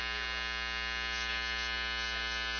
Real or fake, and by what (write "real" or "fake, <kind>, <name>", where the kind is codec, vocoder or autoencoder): real